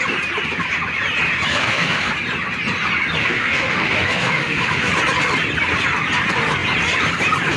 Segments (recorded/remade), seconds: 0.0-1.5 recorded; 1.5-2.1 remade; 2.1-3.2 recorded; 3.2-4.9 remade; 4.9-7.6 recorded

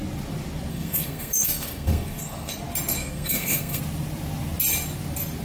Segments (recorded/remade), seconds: 0.0-0.7 recorded; 0.7-2.5 remade; 2.5-3.0 recorded; 3.0-3.8 remade; 3.8-5.4 recorded

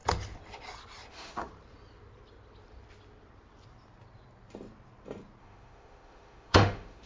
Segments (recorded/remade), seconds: 0.0-1.1 recorded; 1.1-1.5 remade; 1.5-5.4 recorded; 5.4-7.1 remade